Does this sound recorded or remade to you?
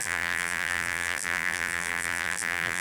remade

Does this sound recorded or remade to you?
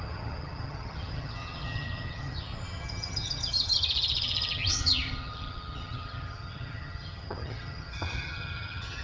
remade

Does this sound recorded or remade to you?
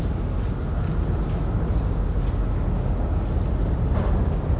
recorded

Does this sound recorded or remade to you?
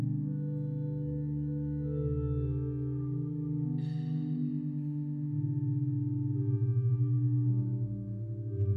recorded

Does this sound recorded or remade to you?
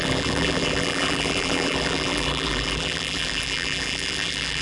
remade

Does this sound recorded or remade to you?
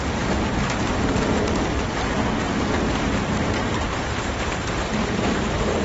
remade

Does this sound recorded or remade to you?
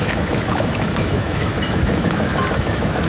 remade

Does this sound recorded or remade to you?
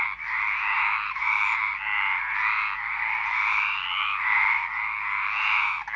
recorded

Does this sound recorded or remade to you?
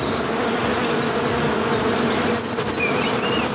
recorded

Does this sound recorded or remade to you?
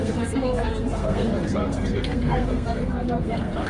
remade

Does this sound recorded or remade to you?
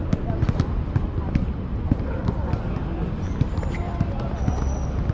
recorded